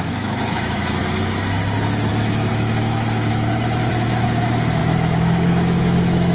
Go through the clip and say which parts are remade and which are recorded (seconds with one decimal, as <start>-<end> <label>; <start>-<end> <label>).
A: 0.0-1.0 remade; 1.0-2.1 recorded; 2.1-6.3 remade